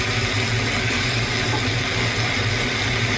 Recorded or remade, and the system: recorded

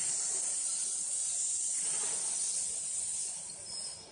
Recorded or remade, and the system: recorded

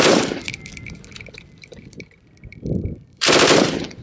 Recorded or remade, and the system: remade, vocoder, BigVGAN v2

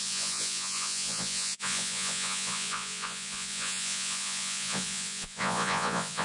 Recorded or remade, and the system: remade, vocoder, Vocos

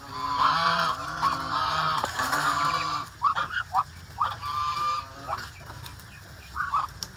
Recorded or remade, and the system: recorded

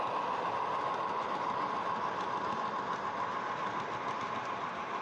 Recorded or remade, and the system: recorded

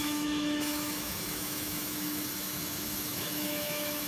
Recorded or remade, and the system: remade, autoencoder, DAC-VAE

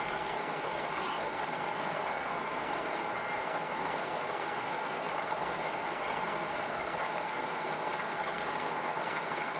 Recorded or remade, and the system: remade, codec, SNAC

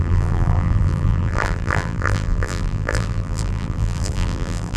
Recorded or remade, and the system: remade, vocoder, BigVGAN v2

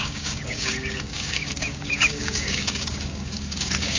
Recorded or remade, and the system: remade, codec, DAC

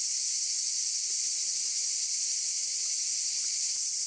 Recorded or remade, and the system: recorded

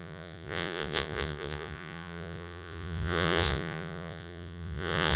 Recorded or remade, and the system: remade, vocoder, Vocos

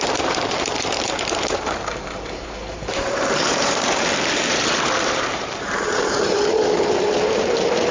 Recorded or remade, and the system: remade, vocoder, BigVGAN v2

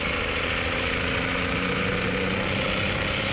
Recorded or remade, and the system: recorded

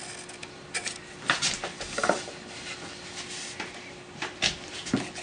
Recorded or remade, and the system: recorded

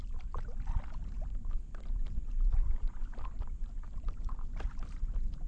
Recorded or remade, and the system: remade, vocoder, BigVGAN v2